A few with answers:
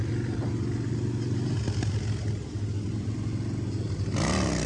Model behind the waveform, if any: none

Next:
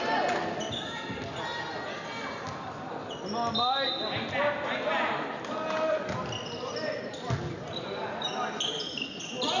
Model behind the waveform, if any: none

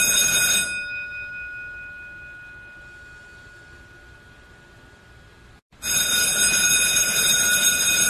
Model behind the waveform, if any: none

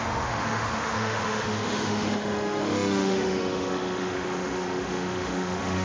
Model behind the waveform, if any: autoencoder, DAC-VAE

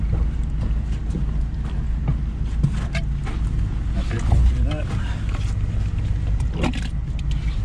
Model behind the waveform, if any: none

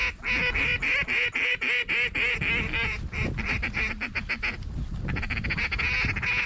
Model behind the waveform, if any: none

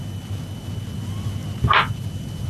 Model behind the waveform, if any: none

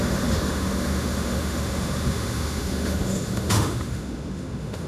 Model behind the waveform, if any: autoencoder, DAC-VAE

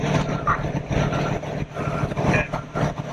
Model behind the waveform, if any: none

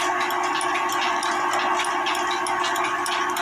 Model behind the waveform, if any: none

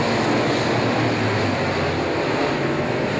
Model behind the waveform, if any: none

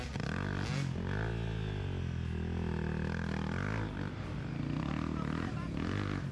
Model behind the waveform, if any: none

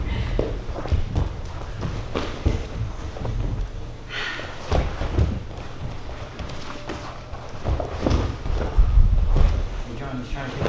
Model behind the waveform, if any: none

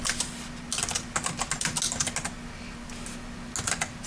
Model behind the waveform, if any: none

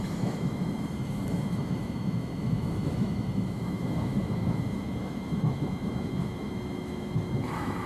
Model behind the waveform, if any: autoencoder, DAC-VAE